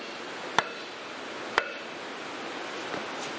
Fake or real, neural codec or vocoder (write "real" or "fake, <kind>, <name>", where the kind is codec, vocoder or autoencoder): real